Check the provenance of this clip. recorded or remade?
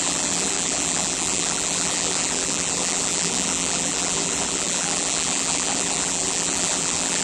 remade